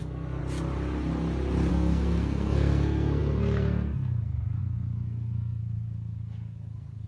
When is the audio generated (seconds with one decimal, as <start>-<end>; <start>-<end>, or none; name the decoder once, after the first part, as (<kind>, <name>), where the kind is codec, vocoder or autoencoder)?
0.0-0.4 (codec, SNAC); 1.7-7.1